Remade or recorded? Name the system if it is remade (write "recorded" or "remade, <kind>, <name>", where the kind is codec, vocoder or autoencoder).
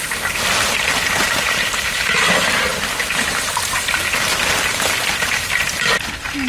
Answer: recorded